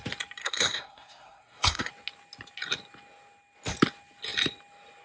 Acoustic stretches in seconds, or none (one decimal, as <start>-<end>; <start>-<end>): 0.0-0.4; 1.9-5.0